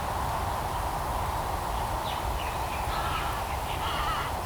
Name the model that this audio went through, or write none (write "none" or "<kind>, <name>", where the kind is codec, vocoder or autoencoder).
vocoder, BigVGAN v2